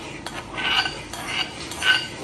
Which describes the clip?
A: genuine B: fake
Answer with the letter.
A